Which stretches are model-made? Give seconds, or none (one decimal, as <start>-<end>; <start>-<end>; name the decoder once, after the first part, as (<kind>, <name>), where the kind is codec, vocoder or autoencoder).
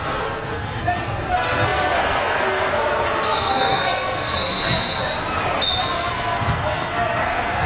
0.0-5.0 (codec, SNAC); 5.8-7.7